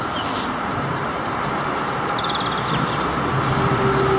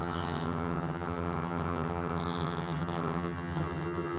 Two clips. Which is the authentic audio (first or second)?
first